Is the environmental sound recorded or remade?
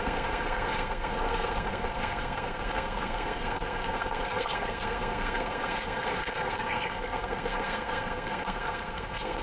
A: remade